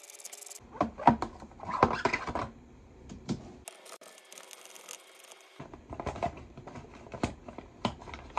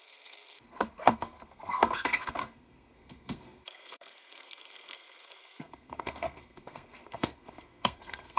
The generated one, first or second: second